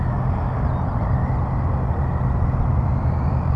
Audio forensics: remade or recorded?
recorded